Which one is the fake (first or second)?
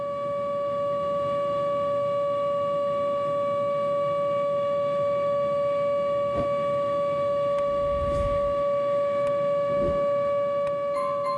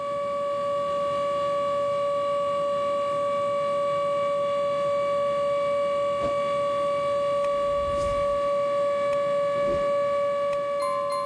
first